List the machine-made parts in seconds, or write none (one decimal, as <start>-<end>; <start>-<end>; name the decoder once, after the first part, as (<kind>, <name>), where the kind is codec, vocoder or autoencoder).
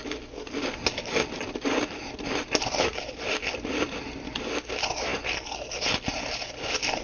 none